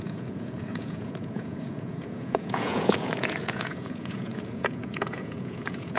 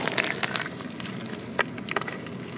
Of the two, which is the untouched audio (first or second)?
second